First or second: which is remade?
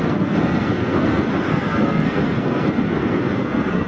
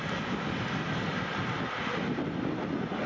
first